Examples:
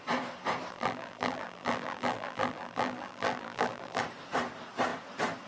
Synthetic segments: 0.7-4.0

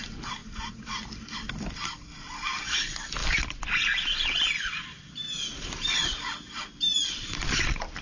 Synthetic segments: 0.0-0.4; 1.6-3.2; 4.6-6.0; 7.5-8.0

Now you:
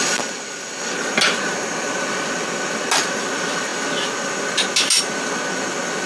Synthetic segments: none

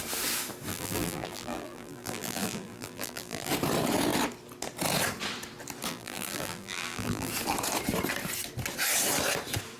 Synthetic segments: 0.7-3.5; 5.9-7.3

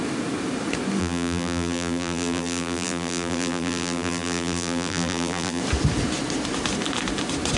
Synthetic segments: 1.0-5.6